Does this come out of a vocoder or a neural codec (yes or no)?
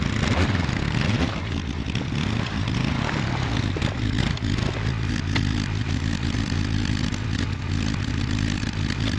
no